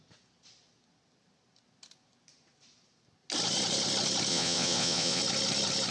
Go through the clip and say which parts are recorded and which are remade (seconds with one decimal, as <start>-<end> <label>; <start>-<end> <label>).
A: 0.0-4.3 recorded; 4.3-5.2 remade; 5.2-5.9 recorded